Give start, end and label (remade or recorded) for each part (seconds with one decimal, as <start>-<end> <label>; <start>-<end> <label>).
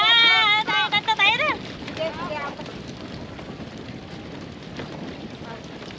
0.0-6.0 recorded